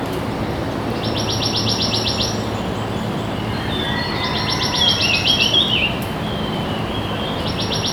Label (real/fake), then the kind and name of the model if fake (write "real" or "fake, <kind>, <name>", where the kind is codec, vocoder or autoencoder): real